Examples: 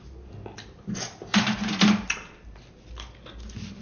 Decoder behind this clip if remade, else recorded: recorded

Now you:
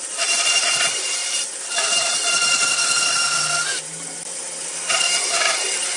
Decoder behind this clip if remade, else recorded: recorded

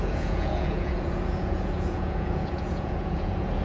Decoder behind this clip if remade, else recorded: remade, vocoder, Vocos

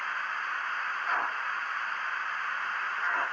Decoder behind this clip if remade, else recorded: recorded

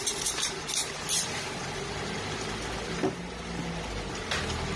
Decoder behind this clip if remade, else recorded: recorded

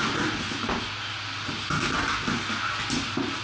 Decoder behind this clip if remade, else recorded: recorded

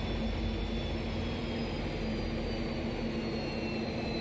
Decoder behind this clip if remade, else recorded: recorded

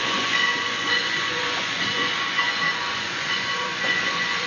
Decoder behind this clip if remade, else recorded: remade, vocoder, Vocos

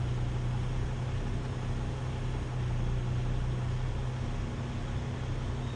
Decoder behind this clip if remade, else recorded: recorded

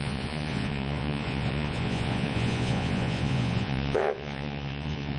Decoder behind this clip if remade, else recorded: remade, vocoder, Vocos